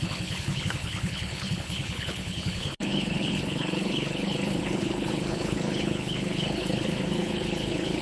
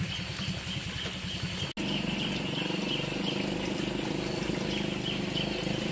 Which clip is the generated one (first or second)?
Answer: first